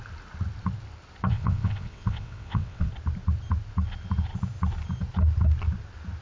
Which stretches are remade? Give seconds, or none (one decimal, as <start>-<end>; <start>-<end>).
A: 1.3-2.9